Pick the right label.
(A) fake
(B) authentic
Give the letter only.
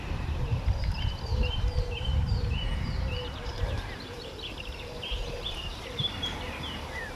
A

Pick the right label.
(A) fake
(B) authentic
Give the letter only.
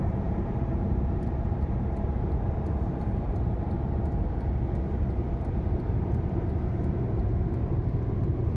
A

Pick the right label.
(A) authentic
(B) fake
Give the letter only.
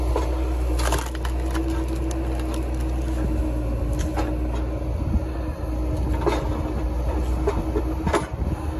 A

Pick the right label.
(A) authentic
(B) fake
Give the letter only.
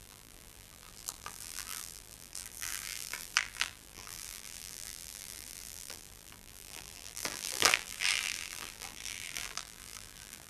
B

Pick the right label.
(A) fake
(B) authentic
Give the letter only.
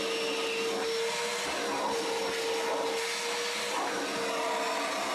B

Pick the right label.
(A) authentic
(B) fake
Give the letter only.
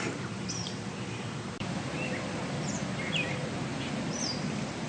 B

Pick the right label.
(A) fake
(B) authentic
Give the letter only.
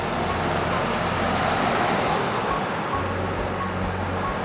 B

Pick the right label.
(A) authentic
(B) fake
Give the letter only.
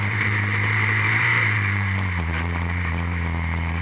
B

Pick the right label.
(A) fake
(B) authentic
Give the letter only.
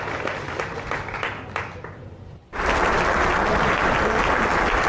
A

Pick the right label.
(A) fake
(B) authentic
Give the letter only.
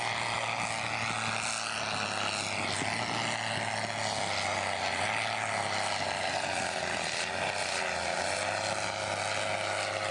B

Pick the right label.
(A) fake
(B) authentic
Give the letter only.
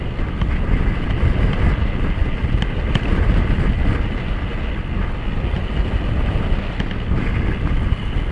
B